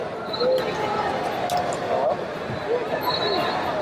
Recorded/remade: recorded